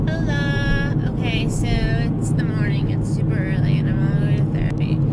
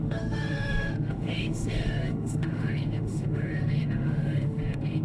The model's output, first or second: second